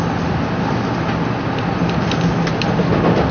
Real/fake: real